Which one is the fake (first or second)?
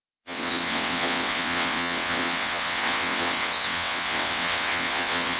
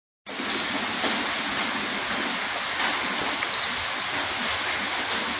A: first